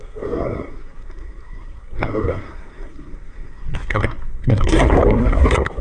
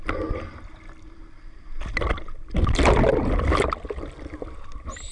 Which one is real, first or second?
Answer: second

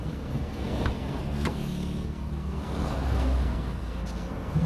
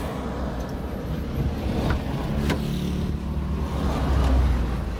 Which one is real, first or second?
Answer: second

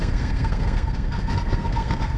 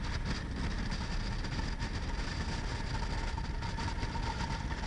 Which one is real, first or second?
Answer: second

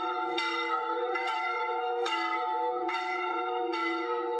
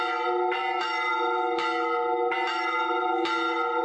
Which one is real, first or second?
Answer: second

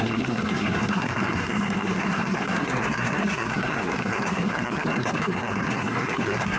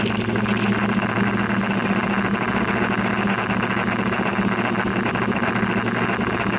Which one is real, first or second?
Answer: second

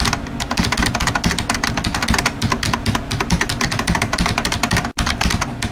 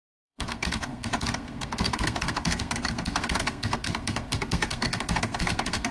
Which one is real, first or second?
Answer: first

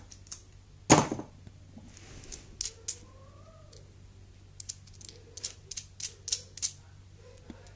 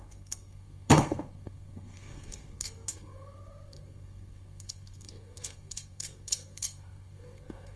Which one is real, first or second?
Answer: first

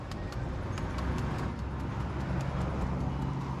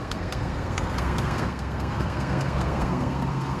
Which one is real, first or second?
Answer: first